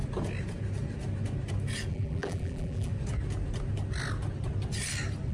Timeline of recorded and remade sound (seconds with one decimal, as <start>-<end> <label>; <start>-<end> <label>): 0.0-1.9 recorded; 1.9-2.9 remade; 2.9-5.3 recorded

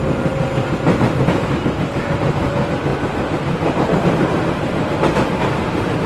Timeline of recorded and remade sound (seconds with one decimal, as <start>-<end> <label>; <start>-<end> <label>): 0.0-2.0 recorded; 2.0-2.5 remade; 2.5-2.9 recorded; 2.9-6.1 remade

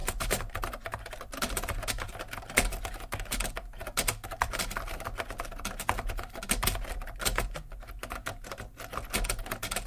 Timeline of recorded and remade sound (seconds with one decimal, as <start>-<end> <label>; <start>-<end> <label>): 0.0-0.6 remade; 0.6-9.9 recorded

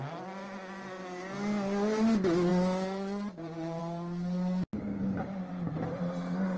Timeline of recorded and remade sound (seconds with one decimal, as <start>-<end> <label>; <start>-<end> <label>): 0.0-6.6 recorded

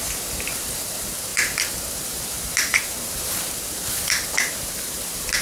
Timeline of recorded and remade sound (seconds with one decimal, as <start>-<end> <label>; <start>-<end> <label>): 0.0-5.4 remade

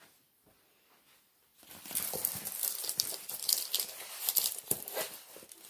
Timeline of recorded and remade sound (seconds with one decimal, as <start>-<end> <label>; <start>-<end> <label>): 0.0-1.5 recorded; 1.5-4.9 remade; 4.9-5.7 recorded

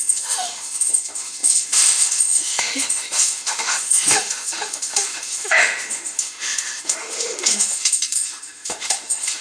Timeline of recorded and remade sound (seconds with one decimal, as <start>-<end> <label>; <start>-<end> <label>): 0.0-9.4 remade